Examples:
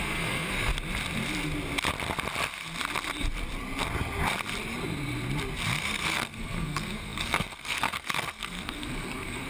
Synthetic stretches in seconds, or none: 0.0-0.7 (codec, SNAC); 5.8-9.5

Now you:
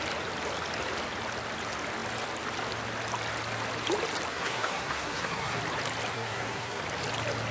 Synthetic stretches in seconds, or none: 4.3-5.6 (codec, SNAC); 6.1-6.8

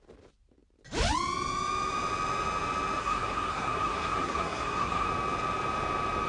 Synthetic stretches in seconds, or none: 3.0-5.1 (codec, SNAC)

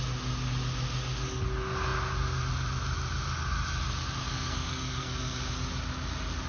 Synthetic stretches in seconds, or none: 4.2-5.5 (codec, SNAC)

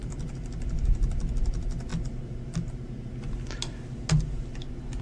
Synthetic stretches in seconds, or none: none

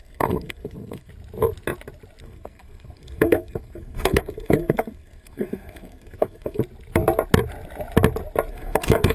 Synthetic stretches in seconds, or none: 0.0-1.1 (codec, SNAC); 2.2-6.6; 8.5-9.1

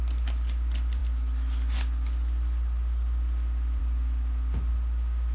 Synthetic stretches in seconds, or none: none